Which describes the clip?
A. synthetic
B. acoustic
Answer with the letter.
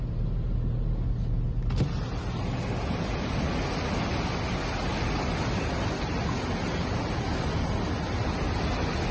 B